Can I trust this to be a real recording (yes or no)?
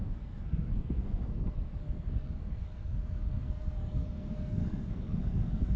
no